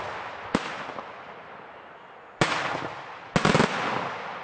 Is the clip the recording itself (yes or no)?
yes